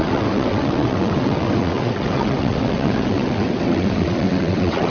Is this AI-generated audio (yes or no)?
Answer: yes